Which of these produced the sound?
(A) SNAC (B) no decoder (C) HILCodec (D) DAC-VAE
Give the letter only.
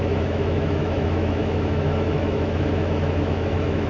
D